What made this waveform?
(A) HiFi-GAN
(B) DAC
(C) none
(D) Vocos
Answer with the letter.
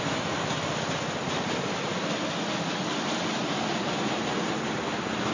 C